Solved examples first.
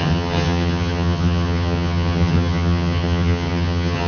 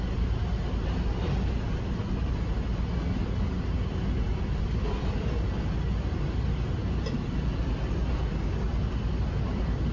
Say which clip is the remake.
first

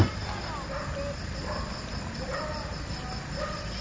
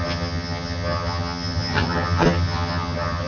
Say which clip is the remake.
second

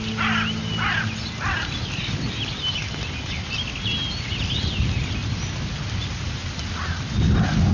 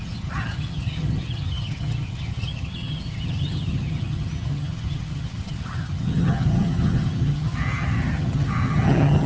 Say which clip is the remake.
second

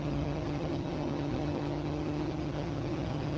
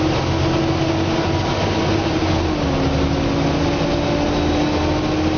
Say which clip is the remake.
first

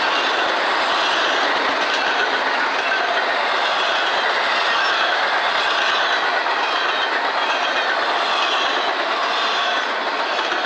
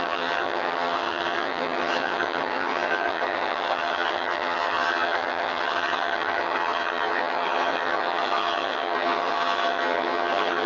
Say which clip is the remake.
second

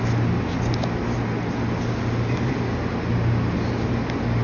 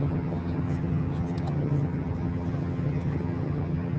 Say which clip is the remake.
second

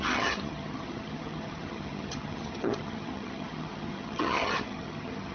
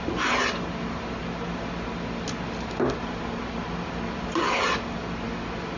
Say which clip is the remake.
first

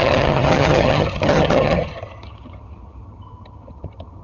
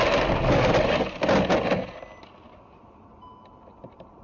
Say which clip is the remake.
first